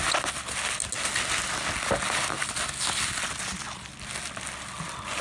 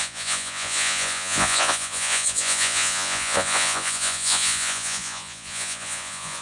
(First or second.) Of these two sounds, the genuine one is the first